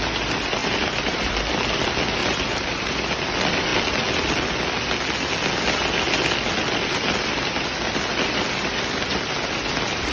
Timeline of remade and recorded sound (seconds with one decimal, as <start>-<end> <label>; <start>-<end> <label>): 0.0-0.6 recorded; 0.6-1.2 remade; 1.2-2.2 recorded; 2.2-3.0 remade; 3.0-10.1 recorded